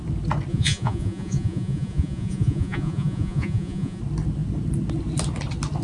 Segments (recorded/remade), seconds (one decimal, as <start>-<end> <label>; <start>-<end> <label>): 0.0-0.5 recorded; 0.5-4.0 remade; 4.0-5.8 recorded